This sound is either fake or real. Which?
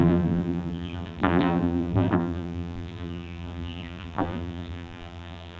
fake